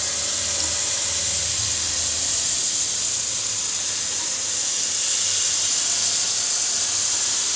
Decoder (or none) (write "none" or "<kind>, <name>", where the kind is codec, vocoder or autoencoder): none